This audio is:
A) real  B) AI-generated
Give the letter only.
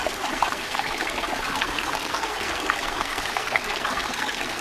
B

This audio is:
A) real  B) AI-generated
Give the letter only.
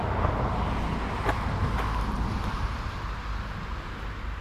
A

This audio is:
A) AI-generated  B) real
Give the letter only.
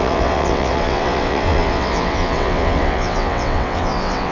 A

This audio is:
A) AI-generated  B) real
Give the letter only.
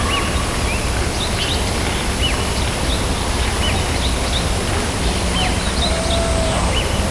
B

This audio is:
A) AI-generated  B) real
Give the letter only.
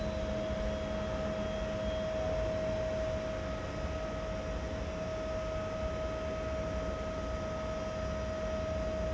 B